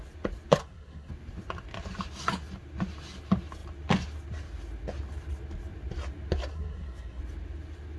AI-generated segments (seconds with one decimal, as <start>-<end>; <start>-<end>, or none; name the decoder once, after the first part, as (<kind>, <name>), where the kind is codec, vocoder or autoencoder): 0.6-1.1 (codec, SNAC); 6.5-7.2